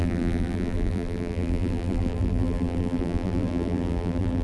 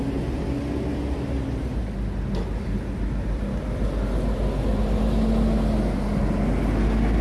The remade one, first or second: first